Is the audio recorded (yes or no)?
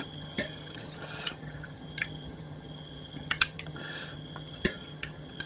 no